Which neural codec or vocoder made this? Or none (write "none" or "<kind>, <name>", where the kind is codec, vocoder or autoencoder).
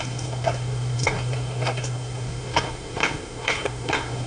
codec, SNAC